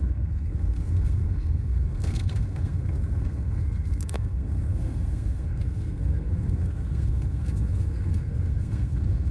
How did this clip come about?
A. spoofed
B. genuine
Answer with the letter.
A